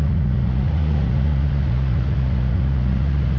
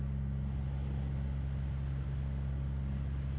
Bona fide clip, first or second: second